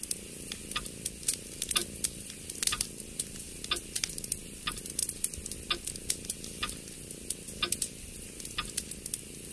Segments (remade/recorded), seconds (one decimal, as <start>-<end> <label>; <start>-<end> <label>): 0.0-9.5 recorded

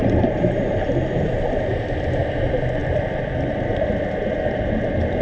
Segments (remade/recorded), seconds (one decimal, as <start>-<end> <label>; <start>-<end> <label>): 0.0-2.2 remade; 2.2-5.2 recorded

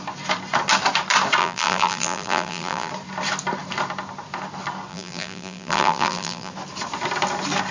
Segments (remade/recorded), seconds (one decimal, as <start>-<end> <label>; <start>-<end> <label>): 0.0-1.4 recorded; 1.4-2.9 remade; 2.9-4.9 recorded; 4.9-6.5 remade; 6.5-7.7 recorded

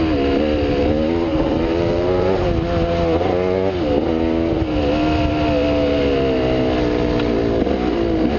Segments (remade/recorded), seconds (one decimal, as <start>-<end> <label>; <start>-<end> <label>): 0.0-1.3 recorded; 1.3-2.5 remade; 2.5-8.4 recorded

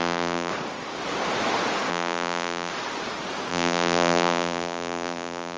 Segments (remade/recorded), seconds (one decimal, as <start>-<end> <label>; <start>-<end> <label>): 0.0-0.5 remade; 0.5-1.9 recorded; 1.9-2.7 remade; 2.7-3.5 recorded; 3.5-5.6 remade